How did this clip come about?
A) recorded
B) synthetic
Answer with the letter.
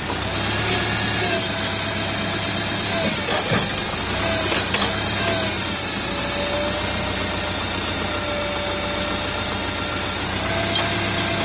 A